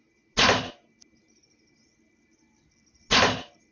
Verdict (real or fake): real